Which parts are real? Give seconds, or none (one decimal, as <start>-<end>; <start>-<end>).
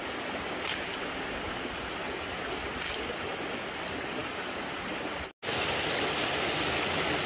0.0-7.3